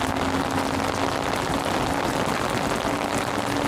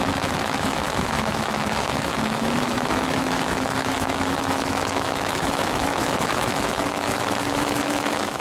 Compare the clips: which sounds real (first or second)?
first